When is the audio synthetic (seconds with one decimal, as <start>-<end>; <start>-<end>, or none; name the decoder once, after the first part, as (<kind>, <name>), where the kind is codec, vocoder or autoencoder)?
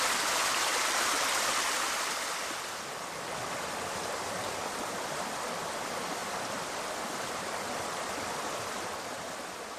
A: none